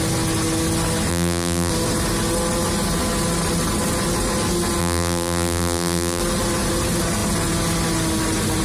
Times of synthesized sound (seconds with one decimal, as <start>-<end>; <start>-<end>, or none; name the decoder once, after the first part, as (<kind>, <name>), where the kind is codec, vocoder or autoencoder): 1.1-1.7 (vocoder, BigVGAN v2); 4.8-6.2